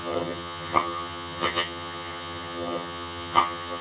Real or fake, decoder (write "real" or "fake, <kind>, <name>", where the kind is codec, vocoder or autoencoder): fake, vocoder, HiFi-GAN